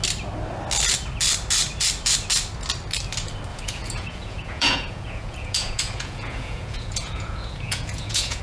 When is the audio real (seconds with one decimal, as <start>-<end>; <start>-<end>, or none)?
0.0-3.5

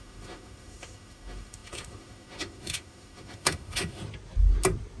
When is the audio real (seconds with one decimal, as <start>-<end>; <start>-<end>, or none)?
4.0-5.0

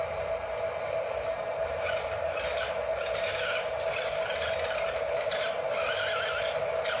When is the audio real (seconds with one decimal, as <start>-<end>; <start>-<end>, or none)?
0.0-1.5; 5.5-7.0